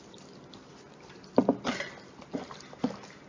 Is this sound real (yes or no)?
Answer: yes